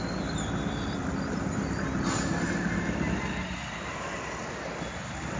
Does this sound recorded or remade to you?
recorded